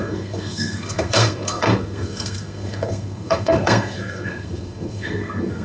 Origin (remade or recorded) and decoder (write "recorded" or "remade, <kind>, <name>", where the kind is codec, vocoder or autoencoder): remade, codec, SNAC